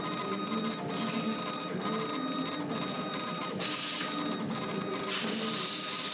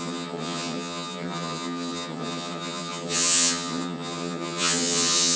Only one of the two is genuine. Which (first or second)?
first